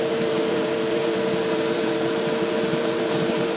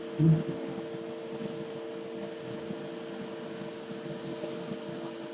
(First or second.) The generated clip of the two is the first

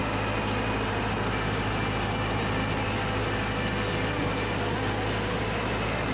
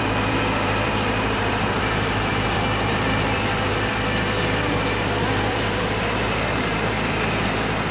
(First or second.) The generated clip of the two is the second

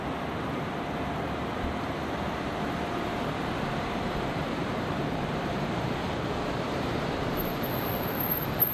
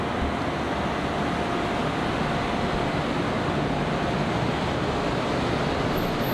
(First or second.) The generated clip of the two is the first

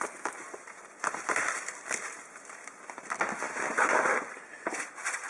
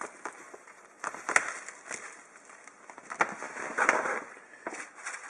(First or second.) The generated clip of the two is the first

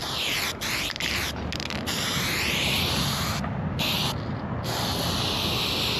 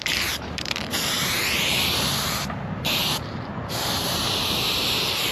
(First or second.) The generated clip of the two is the second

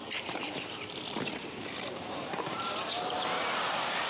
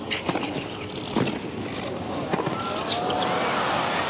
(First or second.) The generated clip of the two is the first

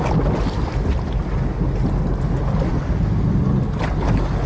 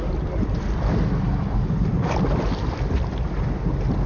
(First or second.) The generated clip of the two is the second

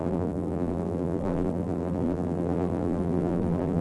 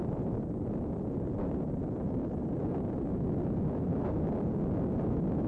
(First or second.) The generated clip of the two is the first